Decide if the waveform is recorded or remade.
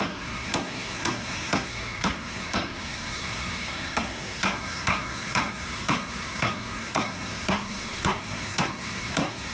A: remade